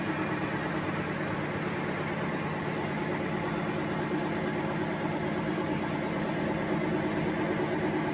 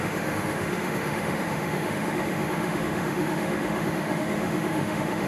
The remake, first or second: second